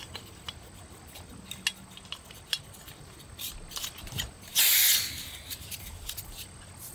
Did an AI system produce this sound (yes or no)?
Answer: no